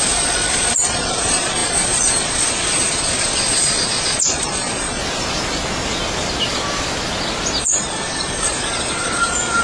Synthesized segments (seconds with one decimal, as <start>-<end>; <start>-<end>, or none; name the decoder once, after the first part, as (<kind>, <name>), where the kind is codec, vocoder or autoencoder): 0.0-5.0 (vocoder, Vocos); 7.6-9.6